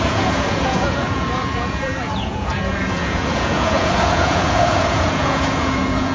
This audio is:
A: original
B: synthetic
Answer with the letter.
B